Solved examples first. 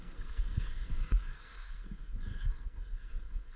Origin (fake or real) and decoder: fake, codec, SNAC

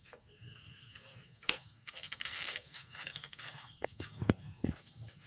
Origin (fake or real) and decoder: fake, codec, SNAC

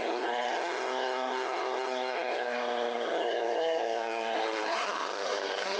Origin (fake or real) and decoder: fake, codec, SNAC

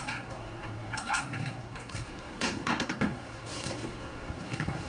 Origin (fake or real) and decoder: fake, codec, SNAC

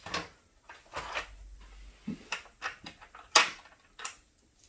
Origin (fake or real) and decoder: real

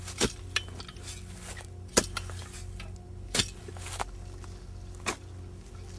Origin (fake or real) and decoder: real